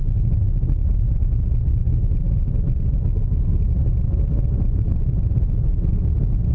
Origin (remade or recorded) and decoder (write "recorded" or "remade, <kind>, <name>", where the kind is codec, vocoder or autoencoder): recorded